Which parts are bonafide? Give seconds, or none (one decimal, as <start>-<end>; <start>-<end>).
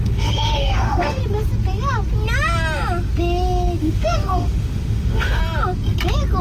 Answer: 1.2-3.8; 5.4-6.4